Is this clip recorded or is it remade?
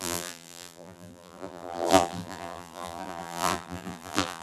remade